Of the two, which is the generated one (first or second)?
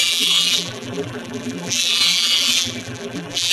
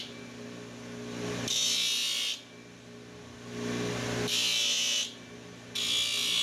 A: first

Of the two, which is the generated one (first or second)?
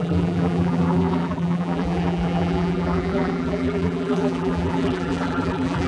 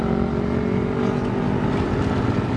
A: first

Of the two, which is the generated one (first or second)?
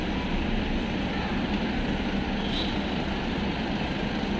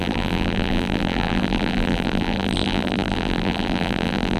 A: second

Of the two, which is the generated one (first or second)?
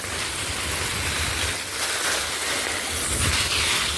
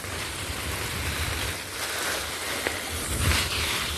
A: second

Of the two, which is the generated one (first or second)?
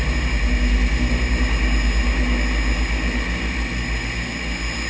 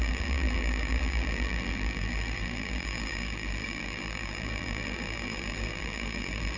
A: second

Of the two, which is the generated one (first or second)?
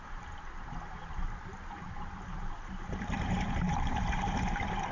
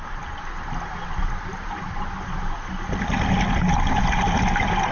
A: first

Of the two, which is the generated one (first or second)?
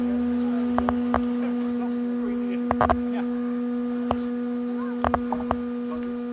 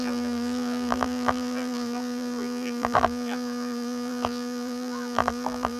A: second